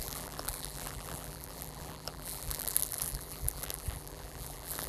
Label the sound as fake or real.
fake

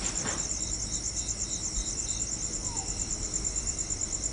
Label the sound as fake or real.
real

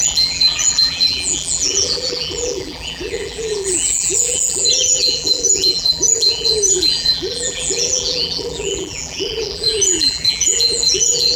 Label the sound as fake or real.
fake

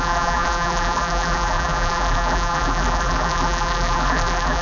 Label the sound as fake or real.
fake